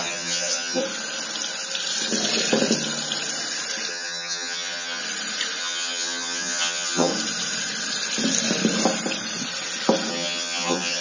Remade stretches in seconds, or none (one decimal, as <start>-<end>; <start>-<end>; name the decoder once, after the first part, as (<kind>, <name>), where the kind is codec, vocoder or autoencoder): 0.0-0.8 (vocoder, HiFi-GAN); 3.9-5.0; 5.6-7.1; 10.1-11.0